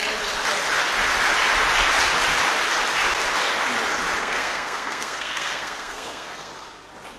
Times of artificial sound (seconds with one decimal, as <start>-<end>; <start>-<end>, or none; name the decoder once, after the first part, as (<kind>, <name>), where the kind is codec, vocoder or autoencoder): 4.2-6.5 (codec, SNAC)